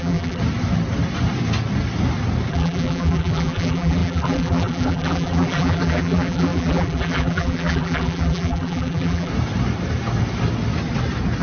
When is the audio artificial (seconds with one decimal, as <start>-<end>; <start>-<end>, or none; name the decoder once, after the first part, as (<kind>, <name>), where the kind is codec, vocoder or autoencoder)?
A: 0.0-0.4 (vocoder, BigVGAN v2); 2.5-9.3